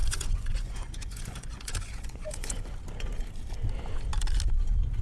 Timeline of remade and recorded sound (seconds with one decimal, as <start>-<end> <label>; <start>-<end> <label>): 0.0-2.8 remade; 2.8-5.0 recorded